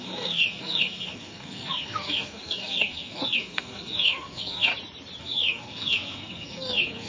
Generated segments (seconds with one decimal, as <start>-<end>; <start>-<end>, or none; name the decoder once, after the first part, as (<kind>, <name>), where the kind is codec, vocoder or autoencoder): 0.0-4.7 (codec, SNAC); 5.2-7.1